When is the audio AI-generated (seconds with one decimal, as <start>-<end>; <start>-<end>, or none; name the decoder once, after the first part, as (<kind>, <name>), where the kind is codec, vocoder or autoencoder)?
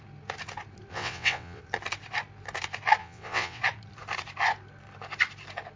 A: 0.9-1.6 (vocoder, WaveNeXt); 3.0-3.6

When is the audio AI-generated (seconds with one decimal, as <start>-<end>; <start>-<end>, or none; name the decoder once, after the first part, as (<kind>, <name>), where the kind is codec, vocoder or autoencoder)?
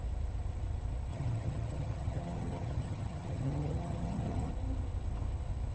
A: 1.1-4.5 (vocoder, HiFi-GAN)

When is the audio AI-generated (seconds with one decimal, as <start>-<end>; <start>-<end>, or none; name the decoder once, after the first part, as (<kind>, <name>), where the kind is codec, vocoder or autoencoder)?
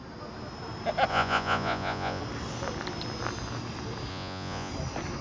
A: 1.1-2.2 (vocoder, Vocos); 4.1-4.7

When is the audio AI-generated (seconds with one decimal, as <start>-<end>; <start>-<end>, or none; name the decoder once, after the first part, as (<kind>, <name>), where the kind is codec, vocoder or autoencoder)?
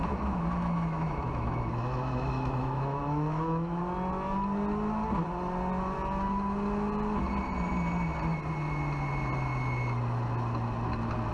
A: 0.0-3.8 (autoencoder, DAC-VAE)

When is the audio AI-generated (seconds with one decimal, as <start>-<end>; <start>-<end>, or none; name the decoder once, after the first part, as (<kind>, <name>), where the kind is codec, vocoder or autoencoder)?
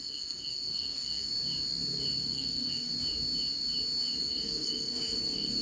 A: 0.0-1.3 (codec, SNAC); 2.2-2.9; 4.2-5.6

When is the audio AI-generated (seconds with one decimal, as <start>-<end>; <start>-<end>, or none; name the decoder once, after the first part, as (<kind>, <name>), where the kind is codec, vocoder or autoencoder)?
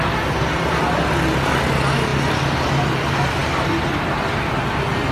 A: none